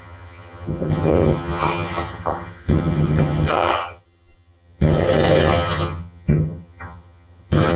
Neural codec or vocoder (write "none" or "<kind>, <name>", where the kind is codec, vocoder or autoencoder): vocoder, HiFi-GAN